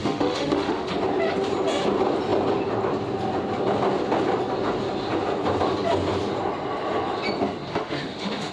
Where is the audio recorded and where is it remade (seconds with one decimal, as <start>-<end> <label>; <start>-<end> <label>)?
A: 0.0-0.9 remade; 0.9-7.7 recorded; 7.7-8.5 remade

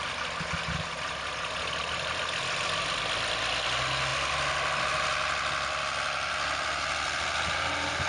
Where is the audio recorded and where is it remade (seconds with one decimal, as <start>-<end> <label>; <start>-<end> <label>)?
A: 0.0-8.1 recorded

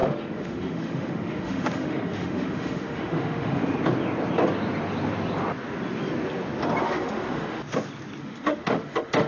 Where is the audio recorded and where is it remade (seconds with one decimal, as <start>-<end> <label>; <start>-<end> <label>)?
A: 0.0-3.6 remade; 3.6-6.8 recorded; 6.8-7.6 remade; 7.6-8.2 recorded; 8.2-9.3 remade

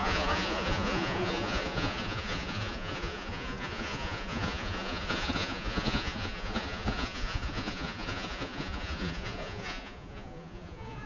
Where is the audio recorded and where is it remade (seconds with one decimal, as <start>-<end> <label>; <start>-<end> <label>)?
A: 0.0-11.1 remade

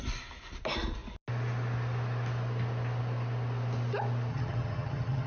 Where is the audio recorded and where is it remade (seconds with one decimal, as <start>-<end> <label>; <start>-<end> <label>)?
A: 0.0-4.3 recorded; 4.3-5.3 remade

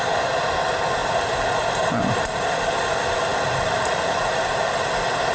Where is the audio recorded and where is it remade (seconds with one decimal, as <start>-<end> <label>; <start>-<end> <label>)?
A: 0.0-1.0 recorded; 1.0-2.4 remade; 2.4-5.3 recorded

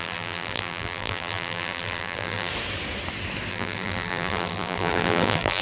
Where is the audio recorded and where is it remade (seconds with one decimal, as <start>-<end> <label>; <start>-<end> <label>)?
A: 0.0-2.5 remade; 2.5-3.5 recorded; 3.5-5.6 remade